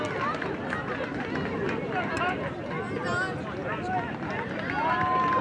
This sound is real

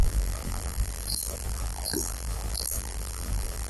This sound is fake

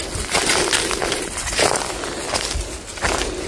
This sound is real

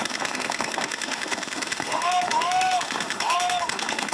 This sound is fake